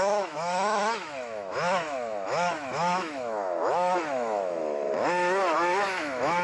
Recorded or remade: remade